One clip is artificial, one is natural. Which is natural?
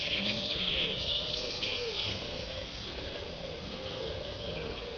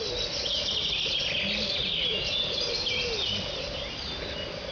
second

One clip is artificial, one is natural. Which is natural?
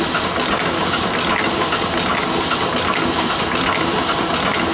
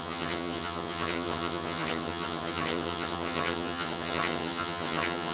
first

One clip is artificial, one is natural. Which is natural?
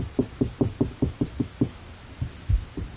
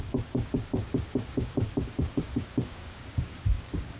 first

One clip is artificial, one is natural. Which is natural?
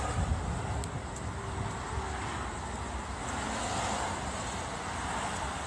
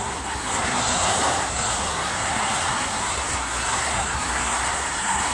first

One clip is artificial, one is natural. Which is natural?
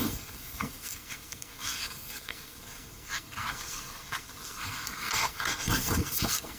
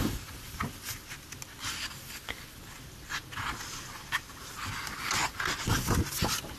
second